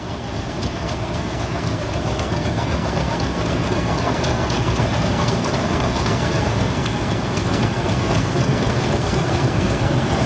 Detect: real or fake fake